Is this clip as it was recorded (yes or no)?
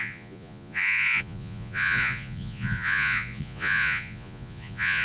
no